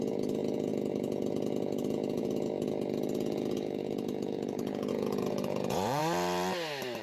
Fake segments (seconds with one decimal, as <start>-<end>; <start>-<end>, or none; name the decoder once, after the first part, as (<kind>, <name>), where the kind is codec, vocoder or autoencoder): 0.0-6.0 (vocoder, Vocos)